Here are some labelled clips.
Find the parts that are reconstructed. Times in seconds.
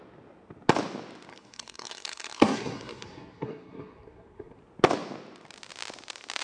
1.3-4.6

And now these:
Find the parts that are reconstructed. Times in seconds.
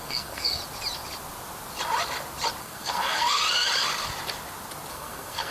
0.0-0.6; 2.6-3.4; 4.9-5.5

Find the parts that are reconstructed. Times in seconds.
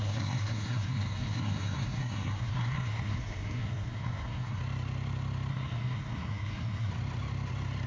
0.0-4.6; 5.5-6.9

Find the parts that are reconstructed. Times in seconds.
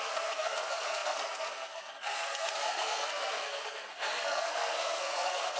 0.0-5.6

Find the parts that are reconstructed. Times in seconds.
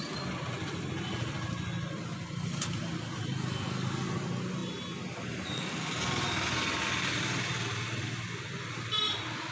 none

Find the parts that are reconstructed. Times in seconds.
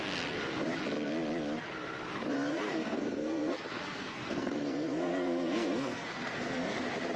2.5-6.8